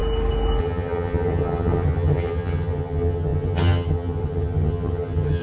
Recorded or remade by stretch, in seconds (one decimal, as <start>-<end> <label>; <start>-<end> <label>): 0.0-0.6 recorded; 0.6-5.4 remade